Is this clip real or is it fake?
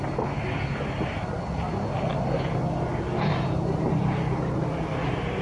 real